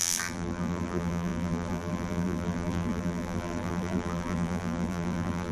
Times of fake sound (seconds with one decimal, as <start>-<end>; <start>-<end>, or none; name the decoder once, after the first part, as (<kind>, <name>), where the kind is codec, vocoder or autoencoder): 0.0-5.5 (vocoder, BigVGAN v2)